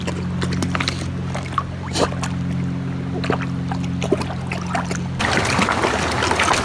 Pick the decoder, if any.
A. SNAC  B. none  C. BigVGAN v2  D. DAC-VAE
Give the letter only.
B